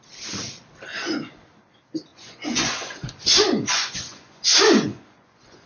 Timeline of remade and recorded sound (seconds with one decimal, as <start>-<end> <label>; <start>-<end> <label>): 0.0-0.9 recorded; 0.9-1.4 remade; 1.4-2.1 recorded; 2.1-5.7 remade